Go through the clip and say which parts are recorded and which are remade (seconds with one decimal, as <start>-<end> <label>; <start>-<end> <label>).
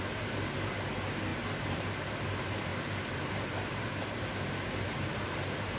0.0-5.8 remade